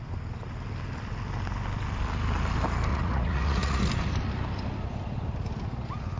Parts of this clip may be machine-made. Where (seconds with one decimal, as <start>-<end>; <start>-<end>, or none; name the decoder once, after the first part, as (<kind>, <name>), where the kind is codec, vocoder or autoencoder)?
2.9-3.8 (vocoder, Vocos)